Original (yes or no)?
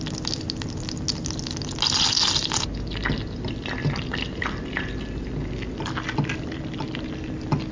yes